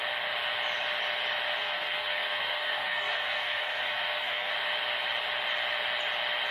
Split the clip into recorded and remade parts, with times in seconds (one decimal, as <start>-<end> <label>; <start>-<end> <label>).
0.0-1.6 recorded; 1.6-4.5 remade; 4.5-6.5 recorded